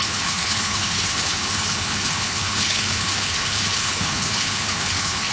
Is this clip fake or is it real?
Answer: fake